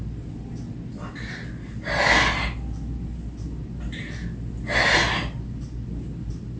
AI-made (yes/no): no